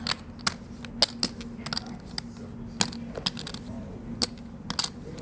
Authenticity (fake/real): real